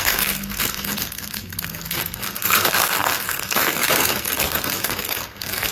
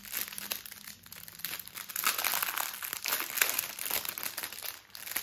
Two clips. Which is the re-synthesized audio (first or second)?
first